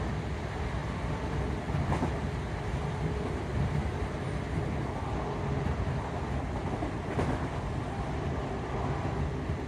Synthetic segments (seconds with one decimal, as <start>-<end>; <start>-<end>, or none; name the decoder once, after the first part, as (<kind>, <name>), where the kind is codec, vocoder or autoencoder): none